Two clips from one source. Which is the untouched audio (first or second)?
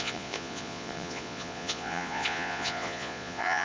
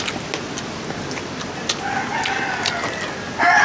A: second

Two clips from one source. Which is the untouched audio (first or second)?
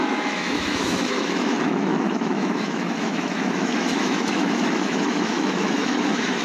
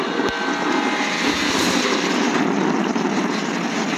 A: second